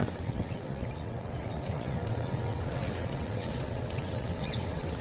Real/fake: fake